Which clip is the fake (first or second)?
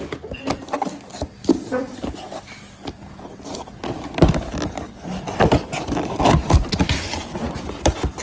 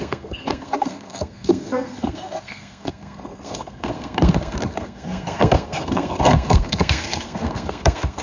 second